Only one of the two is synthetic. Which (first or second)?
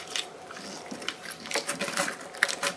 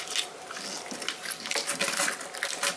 first